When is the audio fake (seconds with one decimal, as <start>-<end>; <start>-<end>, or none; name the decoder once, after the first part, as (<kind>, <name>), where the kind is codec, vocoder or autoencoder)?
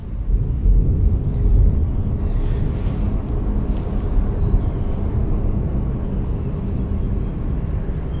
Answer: none